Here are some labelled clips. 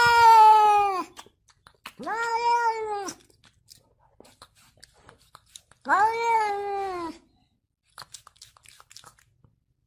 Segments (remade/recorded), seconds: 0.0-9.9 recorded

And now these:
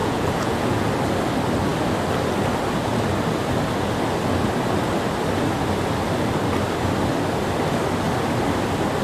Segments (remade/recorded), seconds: 0.0-0.9 remade; 0.9-9.0 recorded

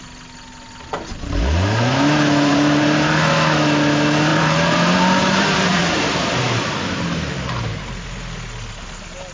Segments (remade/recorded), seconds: 0.0-2.5 recorded; 2.5-3.3 remade; 3.3-4.3 recorded; 4.3-6.6 remade; 6.6-9.3 recorded

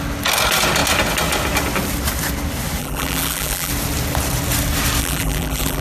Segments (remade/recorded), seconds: 0.0-2.8 recorded; 2.8-3.7 remade; 3.7-5.0 recorded; 5.0-5.8 remade

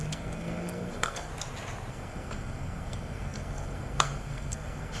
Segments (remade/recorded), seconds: 0.0-1.3 remade; 1.3-1.9 recorded; 1.9-5.0 remade

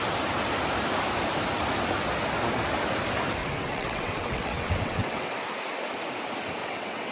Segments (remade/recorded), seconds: 0.0-3.4 recorded; 3.4-5.3 remade; 5.3-6.6 recorded; 6.6-7.1 remade